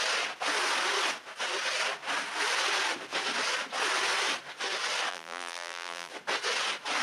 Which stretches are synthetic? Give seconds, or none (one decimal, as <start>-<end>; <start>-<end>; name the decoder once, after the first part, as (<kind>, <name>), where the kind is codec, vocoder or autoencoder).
5.1-6.1 (vocoder, BigVGAN v2)